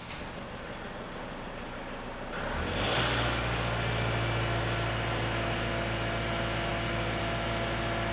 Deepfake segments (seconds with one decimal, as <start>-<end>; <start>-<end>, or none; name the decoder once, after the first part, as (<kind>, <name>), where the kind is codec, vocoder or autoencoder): none